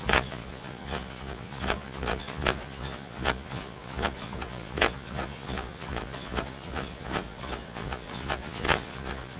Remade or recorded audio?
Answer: remade